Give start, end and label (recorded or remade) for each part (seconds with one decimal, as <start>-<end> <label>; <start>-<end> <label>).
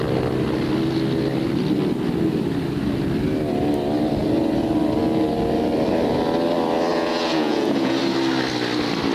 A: 0.0-6.9 recorded; 6.9-8.0 remade; 8.0-9.1 recorded